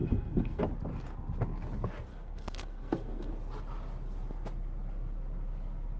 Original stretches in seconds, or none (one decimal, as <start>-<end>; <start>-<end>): 0.6-2.1; 3.3-6.0